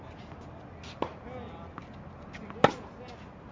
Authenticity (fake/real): real